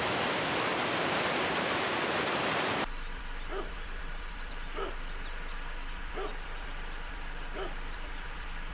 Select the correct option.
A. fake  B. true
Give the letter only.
A